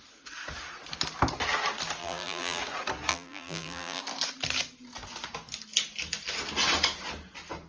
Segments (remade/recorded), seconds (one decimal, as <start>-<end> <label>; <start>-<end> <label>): 0.0-2.0 recorded; 2.0-2.6 remade; 2.6-3.1 recorded; 3.1-4.0 remade; 4.0-7.7 recorded